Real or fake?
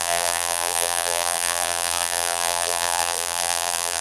fake